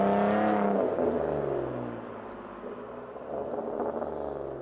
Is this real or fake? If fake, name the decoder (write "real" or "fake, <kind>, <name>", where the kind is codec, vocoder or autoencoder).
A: real